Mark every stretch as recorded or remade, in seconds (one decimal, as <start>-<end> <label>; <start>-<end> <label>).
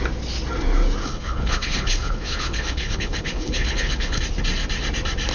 0.0-1.0 recorded; 1.0-4.2 remade; 4.2-5.3 recorded